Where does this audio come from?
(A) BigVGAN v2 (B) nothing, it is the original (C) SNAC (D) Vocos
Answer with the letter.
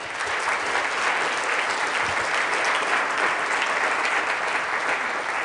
B